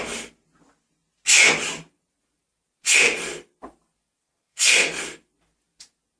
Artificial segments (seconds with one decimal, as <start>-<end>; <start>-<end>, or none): 4.2-5.0